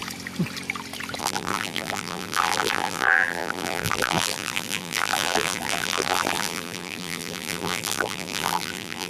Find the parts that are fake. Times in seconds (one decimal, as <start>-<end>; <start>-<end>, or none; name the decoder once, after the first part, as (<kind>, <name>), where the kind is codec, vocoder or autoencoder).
1.2-9.1 (vocoder, BigVGAN v2)